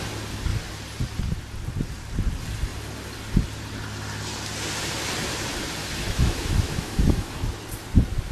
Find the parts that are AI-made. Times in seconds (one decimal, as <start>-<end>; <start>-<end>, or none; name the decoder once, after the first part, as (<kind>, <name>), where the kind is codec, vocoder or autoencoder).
5.8-7.4 (autoencoder, DAC-VAE)